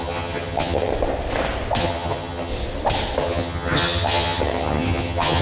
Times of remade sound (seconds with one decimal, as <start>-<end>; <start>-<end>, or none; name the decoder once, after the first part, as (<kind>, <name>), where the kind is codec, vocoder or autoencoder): 0.0-0.9 (vocoder, HiFi-GAN); 1.8-2.5; 3.2-5.4